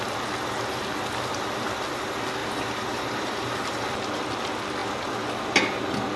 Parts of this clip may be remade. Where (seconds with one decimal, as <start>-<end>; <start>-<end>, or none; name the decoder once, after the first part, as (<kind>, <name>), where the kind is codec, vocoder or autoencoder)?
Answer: 2.4-3.7 (vocoder, BigVGAN v2)